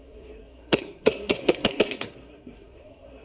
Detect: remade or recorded remade